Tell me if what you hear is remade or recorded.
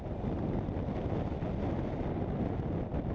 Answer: recorded